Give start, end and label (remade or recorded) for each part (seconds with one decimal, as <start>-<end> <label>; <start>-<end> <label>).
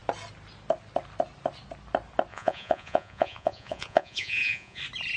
0.0-2.3 recorded; 2.3-4.8 remade; 4.8-5.2 recorded